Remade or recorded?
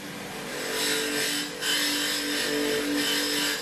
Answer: recorded